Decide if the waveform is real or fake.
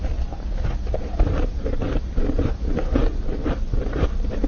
real